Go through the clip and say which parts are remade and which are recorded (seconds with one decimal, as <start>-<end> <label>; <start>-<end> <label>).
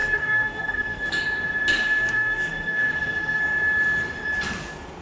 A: 0.0-1.2 remade; 1.2-1.7 recorded; 1.7-3.4 remade; 3.4-5.0 recorded